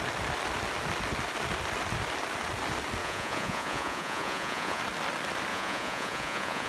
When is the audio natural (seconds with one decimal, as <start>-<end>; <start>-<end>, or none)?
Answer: 0.0-3.0; 4.8-5.5